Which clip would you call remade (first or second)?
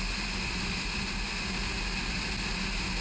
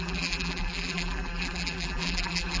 second